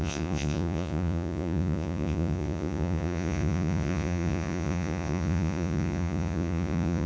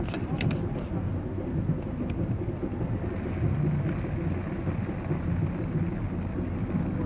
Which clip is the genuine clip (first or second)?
second